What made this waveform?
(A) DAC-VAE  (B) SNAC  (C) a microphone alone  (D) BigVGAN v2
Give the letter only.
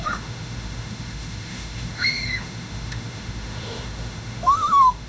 A